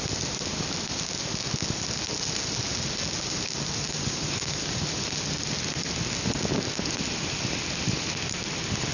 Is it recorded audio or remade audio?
recorded